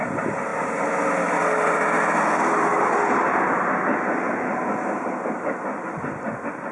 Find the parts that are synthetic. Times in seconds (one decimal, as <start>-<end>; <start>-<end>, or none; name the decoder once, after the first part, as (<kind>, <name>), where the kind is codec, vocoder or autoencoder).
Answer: none